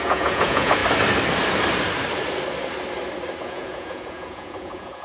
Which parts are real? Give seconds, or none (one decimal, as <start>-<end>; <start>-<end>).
0.8-3.4